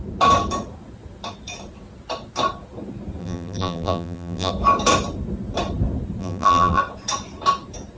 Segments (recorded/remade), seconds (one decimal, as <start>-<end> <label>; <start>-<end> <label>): 0.0-3.2 recorded; 3.2-4.5 remade; 4.5-6.2 recorded; 6.2-6.8 remade; 6.8-8.0 recorded